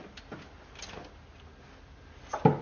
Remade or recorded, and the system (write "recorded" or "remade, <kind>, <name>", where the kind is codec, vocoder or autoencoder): recorded